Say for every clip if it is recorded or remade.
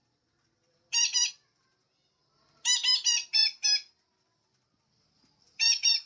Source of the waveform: recorded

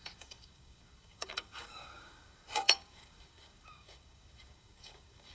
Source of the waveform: remade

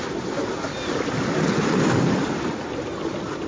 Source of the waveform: recorded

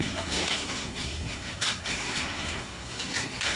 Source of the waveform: remade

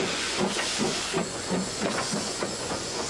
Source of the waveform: remade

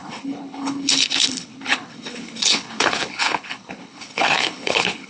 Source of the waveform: remade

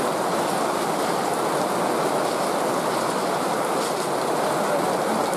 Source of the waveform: recorded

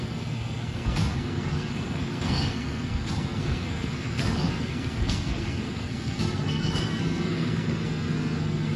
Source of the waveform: remade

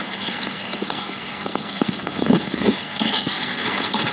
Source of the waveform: remade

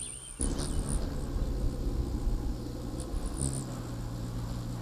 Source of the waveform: recorded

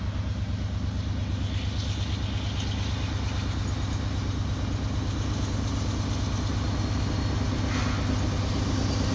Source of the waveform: recorded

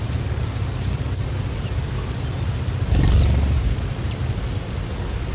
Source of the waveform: remade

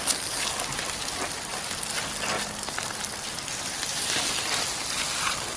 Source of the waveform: recorded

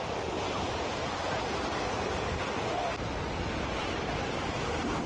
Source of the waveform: recorded